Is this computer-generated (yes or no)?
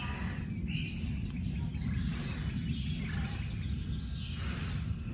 no